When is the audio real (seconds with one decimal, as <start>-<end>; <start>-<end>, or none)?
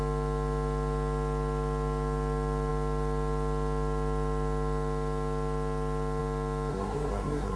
0.0-6.7